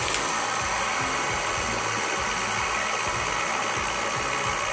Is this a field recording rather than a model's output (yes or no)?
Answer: yes